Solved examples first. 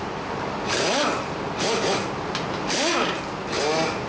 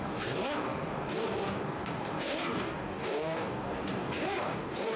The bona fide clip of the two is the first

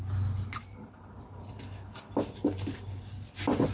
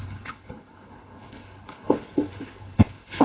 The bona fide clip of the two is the first